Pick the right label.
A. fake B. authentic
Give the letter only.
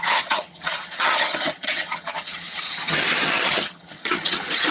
A